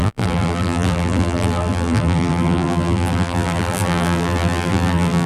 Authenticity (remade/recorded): remade